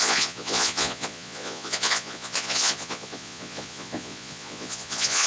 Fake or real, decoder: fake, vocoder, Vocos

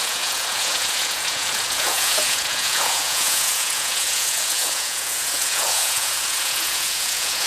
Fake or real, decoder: fake, vocoder, Vocos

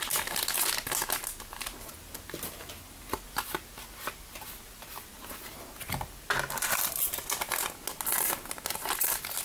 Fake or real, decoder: real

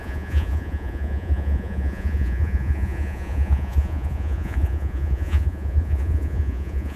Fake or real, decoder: fake, vocoder, Vocos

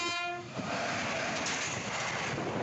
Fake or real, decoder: real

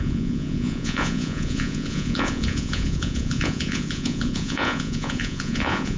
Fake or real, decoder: fake, vocoder, Vocos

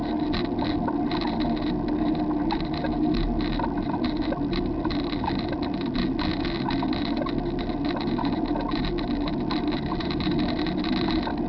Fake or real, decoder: real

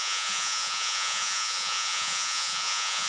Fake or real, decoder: fake, vocoder, Vocos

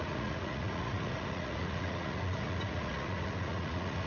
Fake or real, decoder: fake, vocoder, Vocos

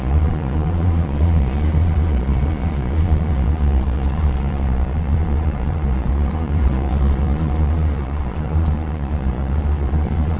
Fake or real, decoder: fake, vocoder, Vocos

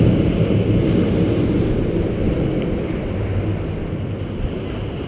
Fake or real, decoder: real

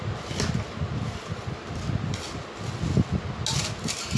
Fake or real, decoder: real